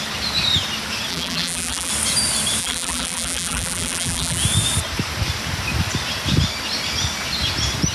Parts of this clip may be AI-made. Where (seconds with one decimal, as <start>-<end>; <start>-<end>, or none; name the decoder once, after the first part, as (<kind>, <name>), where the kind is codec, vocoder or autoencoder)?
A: 1.1-1.9 (vocoder, BigVGAN v2); 2.6-4.4